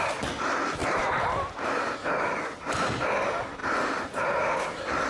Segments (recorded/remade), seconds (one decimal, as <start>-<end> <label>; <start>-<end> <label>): 0.0-0.8 recorded; 0.8-2.1 remade; 2.1-5.1 recorded